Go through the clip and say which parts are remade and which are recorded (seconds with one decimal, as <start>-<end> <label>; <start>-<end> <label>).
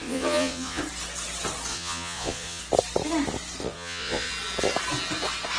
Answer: 0.0-0.8 remade; 0.8-1.7 recorded; 1.7-2.6 remade; 2.6-3.6 recorded; 3.6-4.3 remade; 4.3-5.6 recorded